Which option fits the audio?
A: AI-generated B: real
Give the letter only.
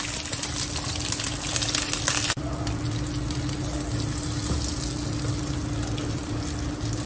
B